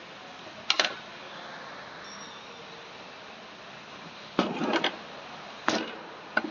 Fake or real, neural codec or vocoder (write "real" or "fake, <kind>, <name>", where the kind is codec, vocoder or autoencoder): real